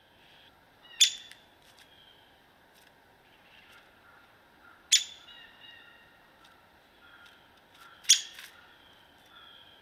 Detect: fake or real real